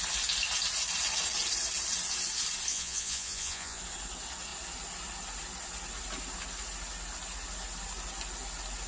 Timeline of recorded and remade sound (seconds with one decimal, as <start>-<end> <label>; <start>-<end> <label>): 0.0-2.7 recorded; 2.7-3.8 remade; 3.8-8.9 recorded